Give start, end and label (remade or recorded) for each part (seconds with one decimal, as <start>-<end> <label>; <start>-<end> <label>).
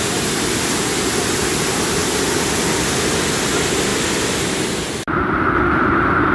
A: 0.0-6.3 recorded